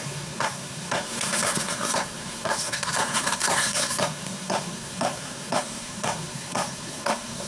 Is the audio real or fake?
fake